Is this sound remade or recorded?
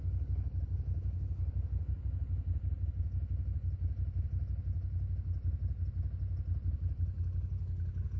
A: recorded